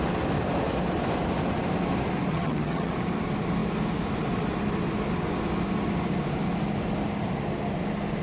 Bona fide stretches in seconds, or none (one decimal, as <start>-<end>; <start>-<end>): 0.0-2.3; 2.9-8.2